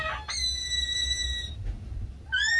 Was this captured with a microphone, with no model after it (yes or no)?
yes